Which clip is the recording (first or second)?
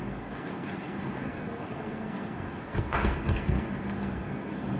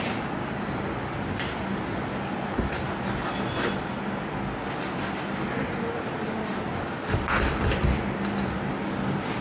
second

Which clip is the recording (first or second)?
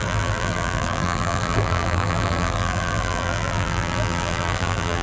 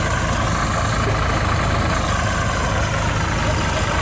second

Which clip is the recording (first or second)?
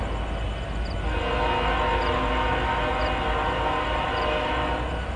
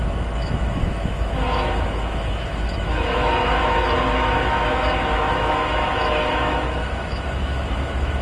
first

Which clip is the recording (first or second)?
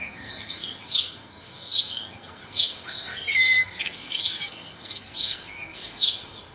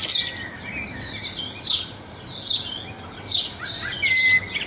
second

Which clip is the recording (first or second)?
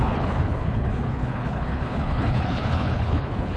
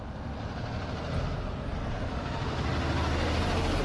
second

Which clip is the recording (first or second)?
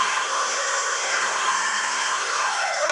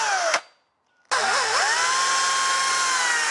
second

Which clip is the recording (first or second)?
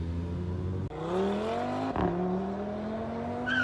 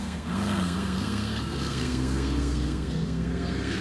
first